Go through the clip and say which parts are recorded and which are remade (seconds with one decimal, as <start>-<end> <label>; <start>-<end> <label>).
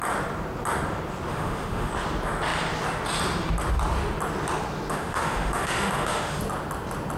0.0-1.3 recorded; 1.3-1.9 remade; 1.9-4.9 recorded; 4.9-6.4 remade; 6.4-7.2 recorded